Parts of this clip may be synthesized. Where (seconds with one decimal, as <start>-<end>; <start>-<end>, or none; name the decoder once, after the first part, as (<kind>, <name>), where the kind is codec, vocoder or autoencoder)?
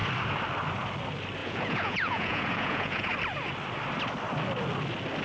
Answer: 1.4-3.1 (vocoder, Vocos)